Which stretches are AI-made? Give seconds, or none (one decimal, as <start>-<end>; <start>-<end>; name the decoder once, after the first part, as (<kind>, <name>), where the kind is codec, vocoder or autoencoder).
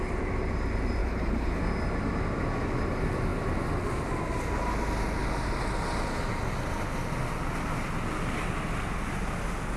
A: 1.0-1.6 (codec, HILCodec)